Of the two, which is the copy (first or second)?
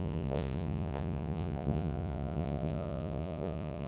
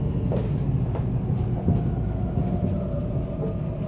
first